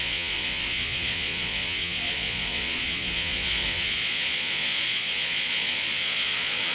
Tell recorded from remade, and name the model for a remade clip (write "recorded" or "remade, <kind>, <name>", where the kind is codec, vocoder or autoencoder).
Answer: remade, vocoder, Vocos